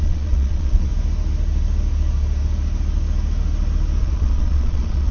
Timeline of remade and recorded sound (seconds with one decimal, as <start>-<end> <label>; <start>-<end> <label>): 0.0-0.9 remade; 0.9-4.0 recorded; 4.0-5.1 remade